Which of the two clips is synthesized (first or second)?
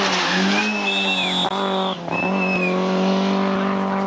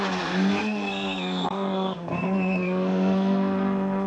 second